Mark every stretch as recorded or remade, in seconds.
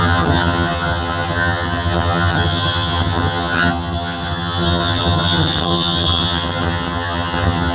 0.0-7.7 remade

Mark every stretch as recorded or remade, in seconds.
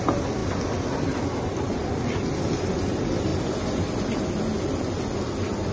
0.0-5.7 recorded